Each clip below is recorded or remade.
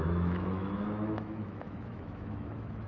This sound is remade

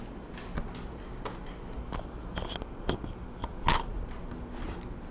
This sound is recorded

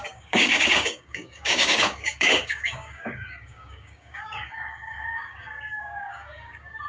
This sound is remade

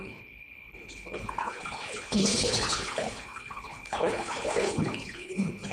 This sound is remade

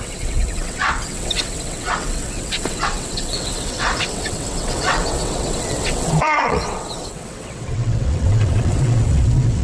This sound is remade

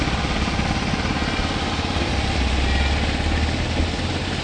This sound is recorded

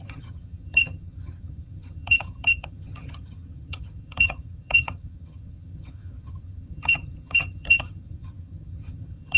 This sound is remade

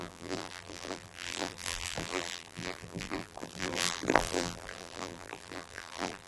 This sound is remade